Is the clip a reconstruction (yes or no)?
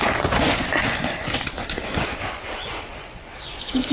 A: yes